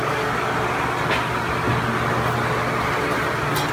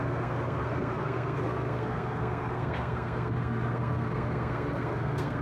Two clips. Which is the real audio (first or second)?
first